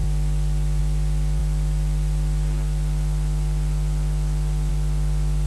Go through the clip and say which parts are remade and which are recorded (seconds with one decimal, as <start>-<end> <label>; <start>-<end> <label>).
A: 0.0-5.5 recorded